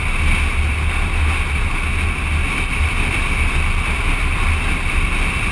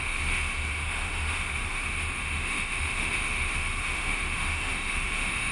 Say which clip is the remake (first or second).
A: second